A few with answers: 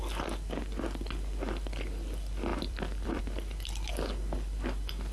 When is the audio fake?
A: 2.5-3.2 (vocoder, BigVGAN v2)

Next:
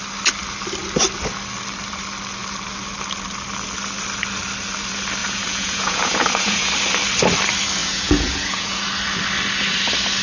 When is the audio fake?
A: 5.2-6.7 (vocoder, Vocos); 7.8-8.8

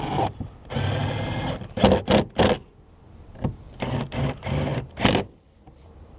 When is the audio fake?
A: none

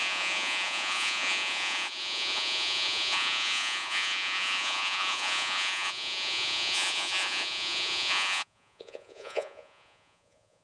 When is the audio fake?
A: 0.0-10.6 (vocoder, Vocos)

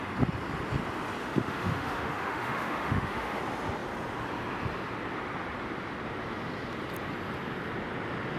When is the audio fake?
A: 1.2-3.4 (autoencoder, DAC-VAE)

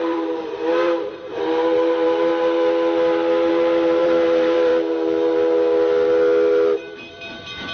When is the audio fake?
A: 0.0-2.3 (vocoder, BigVGAN v2); 3.5-4.7; 6.8-7.7